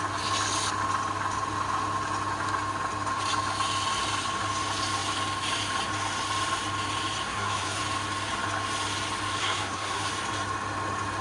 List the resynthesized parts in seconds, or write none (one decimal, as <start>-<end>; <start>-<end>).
7.3-7.8; 9.4-10.1